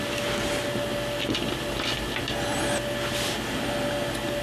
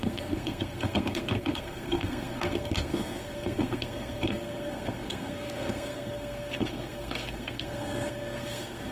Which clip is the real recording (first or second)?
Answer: first